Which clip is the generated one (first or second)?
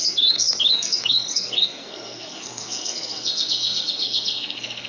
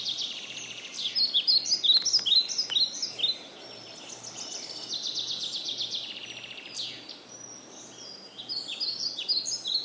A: first